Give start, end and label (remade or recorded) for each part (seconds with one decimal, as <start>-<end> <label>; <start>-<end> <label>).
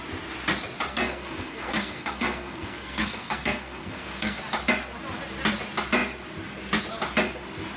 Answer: 0.0-0.9 recorded; 0.9-4.4 remade; 4.4-7.8 recorded